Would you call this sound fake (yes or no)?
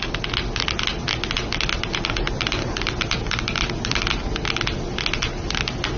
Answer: no